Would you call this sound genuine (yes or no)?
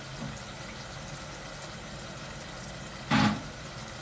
yes